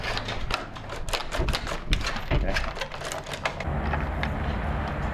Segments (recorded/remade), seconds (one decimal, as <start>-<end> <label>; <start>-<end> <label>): 0.0-5.1 recorded